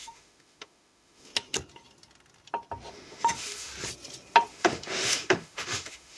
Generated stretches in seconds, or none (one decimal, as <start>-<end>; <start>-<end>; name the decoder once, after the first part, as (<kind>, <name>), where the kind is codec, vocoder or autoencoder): 0.0-1.3 (autoencoder, DAC-VAE); 2.9-3.7; 4.5-6.2